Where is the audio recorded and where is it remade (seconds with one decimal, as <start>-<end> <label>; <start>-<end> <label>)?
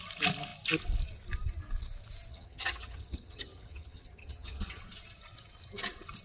0.0-2.3 recorded; 2.3-4.8 remade; 4.8-6.2 recorded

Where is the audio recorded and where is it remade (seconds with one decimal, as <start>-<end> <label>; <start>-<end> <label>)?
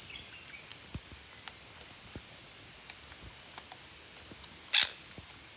0.0-5.6 recorded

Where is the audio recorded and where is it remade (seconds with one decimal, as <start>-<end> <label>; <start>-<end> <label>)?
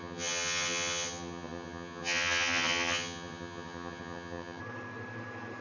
0.0-4.6 remade; 4.6-5.6 recorded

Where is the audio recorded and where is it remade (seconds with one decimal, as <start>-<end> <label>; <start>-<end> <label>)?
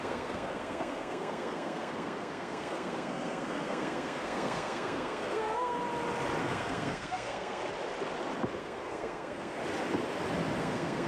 0.0-5.8 remade; 5.8-6.4 recorded; 6.4-7.6 remade; 7.6-8.6 recorded; 8.6-9.6 remade; 9.6-10.6 recorded; 10.6-11.1 remade